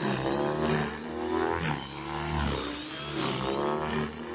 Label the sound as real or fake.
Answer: real